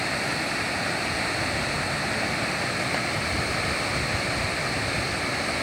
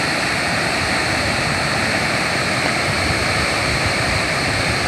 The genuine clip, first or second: first